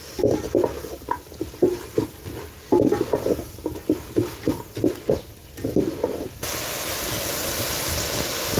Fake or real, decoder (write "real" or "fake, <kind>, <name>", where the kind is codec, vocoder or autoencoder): real